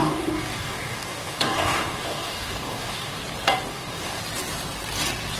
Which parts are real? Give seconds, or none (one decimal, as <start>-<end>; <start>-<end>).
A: 3.2-3.7; 4.2-5.4